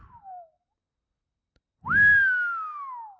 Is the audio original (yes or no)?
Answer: yes